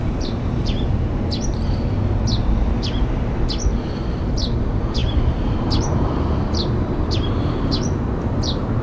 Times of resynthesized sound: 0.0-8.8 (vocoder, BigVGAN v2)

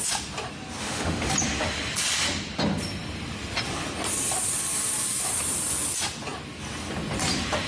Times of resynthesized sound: 0.8-1.3 (autoencoder, DAC-VAE)

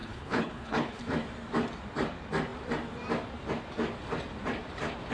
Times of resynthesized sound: 0.0-1.0 (codec, HILCodec)